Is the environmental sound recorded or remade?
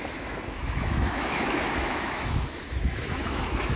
remade